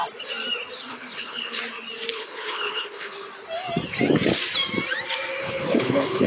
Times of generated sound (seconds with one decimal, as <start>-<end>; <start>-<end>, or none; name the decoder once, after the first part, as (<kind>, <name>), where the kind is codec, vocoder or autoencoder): 0.9-1.6 (codec, HILCodec); 2.1-3.3; 5.4-6.3